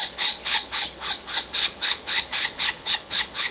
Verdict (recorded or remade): remade